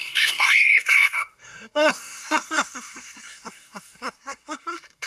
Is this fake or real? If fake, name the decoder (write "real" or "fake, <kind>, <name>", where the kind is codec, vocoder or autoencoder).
fake, codec, SNAC